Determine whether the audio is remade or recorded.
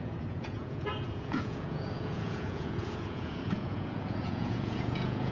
remade